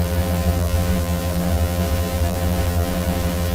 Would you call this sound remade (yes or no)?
yes